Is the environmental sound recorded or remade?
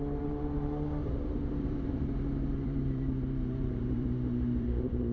remade